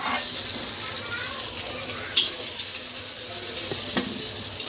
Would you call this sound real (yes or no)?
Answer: yes